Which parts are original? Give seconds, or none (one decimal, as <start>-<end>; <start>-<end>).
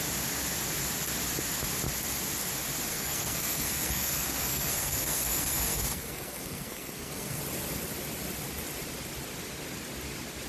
0.0-2.9; 7.4-10.5